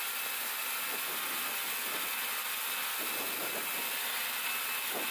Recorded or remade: recorded